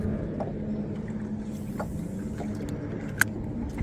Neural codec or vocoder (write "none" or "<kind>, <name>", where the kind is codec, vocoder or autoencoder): none